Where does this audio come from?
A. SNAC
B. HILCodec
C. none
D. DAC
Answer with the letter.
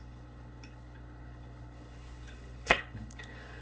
B